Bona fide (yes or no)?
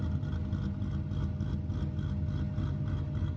yes